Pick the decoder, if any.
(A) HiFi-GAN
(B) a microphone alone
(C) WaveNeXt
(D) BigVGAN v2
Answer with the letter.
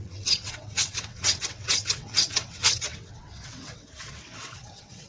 C